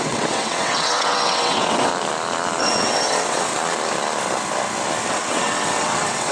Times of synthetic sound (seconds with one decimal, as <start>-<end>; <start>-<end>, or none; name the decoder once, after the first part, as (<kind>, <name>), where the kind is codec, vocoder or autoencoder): 0.0-1.9 (vocoder, WaveNeXt); 2.6-3.5; 5.1-6.3